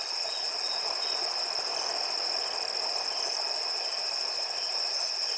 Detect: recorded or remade recorded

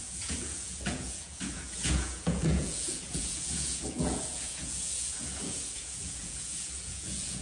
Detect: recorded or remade remade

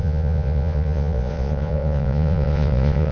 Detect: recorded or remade remade